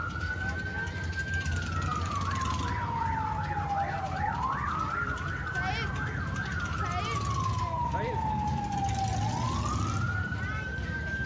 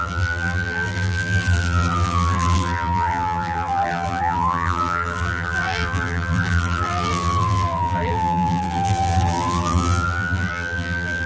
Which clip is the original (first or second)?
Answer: first